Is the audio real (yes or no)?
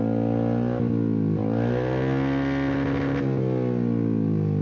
yes